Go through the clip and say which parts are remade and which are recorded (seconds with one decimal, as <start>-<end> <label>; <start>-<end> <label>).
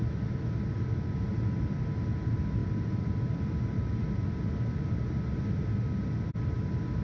0.0-7.0 recorded